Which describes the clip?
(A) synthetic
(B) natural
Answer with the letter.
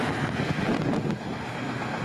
B